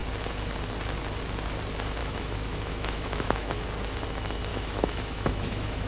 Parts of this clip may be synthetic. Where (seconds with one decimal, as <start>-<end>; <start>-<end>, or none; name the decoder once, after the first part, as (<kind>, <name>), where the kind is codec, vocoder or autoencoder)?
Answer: 2.0-3.6 (autoencoder, DAC-VAE); 4.5-5.9